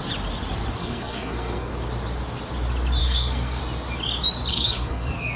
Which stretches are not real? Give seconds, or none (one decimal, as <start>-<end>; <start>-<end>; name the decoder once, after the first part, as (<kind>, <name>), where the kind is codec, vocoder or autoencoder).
0.8-1.7 (codec, SNAC); 3.0-3.6; 4.5-5.4

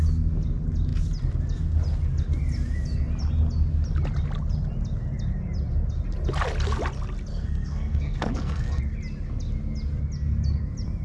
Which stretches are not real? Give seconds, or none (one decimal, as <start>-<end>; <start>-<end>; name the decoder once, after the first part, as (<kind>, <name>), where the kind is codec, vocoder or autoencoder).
7.3-8.8 (codec, SNAC)